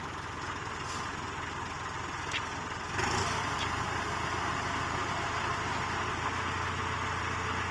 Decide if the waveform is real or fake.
real